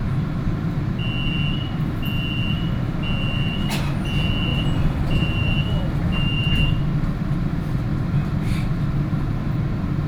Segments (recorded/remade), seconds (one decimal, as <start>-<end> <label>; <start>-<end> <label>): 0.0-4.5 recorded; 4.5-6.8 remade; 6.8-7.9 recorded; 7.9-8.7 remade; 8.7-10.1 recorded